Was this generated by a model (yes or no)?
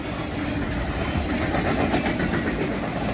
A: no